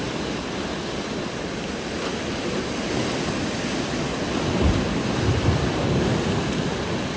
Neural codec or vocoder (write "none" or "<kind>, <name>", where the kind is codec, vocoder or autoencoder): none